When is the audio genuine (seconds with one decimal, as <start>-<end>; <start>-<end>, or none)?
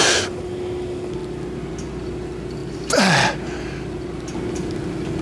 0.0-5.2